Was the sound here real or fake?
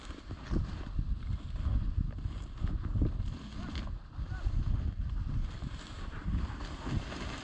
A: real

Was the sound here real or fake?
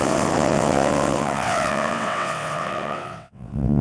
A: fake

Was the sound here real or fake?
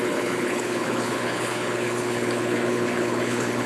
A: fake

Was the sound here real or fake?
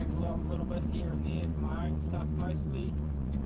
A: fake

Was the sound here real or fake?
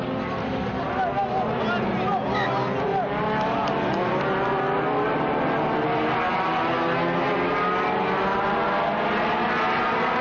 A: real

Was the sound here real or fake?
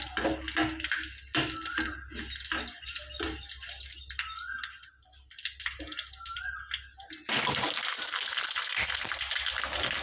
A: real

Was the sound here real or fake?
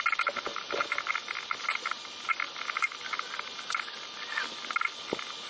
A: real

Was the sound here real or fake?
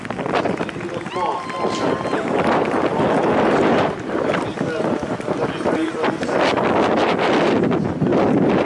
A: real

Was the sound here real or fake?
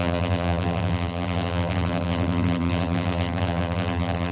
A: fake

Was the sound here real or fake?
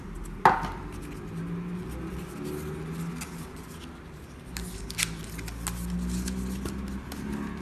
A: real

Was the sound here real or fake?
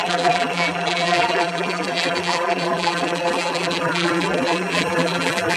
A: fake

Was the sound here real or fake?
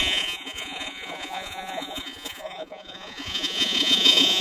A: fake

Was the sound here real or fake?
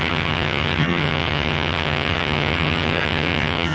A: fake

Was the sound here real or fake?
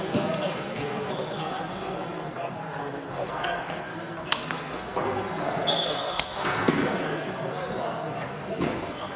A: fake